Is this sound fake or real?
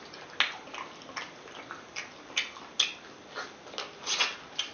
real